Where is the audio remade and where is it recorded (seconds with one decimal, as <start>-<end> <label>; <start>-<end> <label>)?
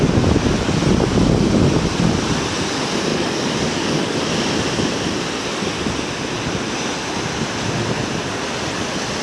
0.0-3.1 recorded; 3.1-4.2 remade; 4.2-9.2 recorded